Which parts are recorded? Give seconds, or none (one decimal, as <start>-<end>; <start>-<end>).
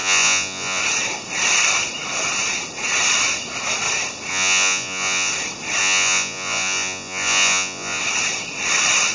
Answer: 0.8-4.3; 5.3-5.8; 8.0-9.1